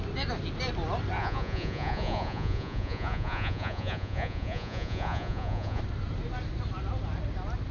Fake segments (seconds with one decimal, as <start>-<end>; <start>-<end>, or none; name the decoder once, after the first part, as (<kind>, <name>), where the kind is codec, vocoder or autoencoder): 1.2-5.8 (vocoder, Vocos)